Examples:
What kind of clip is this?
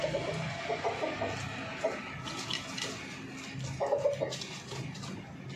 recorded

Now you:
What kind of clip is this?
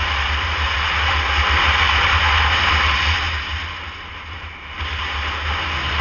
recorded